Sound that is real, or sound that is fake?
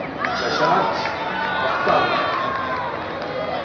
real